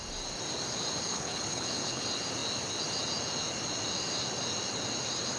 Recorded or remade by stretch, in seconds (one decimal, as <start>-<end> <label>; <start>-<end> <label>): 0.0-1.0 recorded; 1.0-2.0 remade; 2.0-5.4 recorded